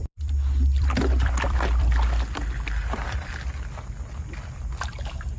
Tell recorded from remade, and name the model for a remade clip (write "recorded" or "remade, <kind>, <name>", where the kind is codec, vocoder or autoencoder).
remade, vocoder, BigVGAN v2